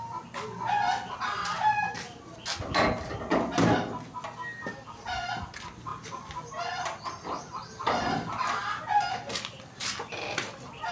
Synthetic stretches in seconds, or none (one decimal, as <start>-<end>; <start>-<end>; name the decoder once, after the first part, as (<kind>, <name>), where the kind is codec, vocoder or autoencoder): none